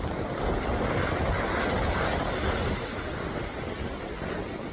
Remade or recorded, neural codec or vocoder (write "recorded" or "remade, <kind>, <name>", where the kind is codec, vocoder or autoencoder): recorded